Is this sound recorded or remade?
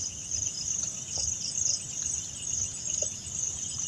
recorded